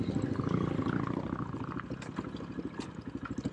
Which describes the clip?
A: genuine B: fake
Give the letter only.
A